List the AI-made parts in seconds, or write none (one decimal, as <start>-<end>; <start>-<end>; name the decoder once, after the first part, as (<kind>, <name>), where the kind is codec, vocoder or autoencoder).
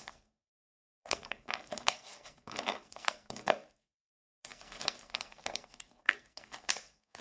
0.0-7.2 (codec, SNAC)